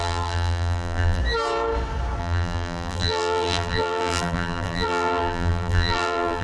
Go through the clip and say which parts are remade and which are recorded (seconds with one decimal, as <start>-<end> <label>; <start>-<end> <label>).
0.0-1.2 remade; 1.2-2.2 recorded; 2.2-6.4 remade